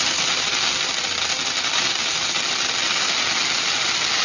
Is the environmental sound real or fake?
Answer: real